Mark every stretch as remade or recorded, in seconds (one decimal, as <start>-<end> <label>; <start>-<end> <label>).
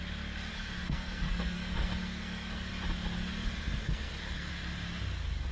0.0-0.5 recorded; 0.5-2.7 remade; 2.7-3.8 recorded; 3.8-4.5 remade; 4.5-5.5 recorded